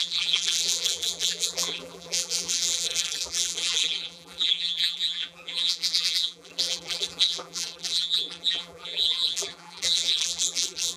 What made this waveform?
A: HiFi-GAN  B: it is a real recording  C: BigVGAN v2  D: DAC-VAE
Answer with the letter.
C